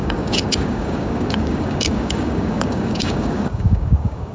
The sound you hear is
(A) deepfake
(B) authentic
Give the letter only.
A